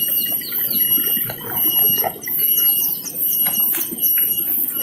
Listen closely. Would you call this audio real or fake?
real